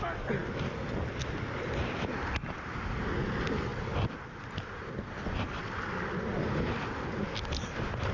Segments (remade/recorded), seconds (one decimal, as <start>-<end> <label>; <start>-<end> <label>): 0.0-8.1 recorded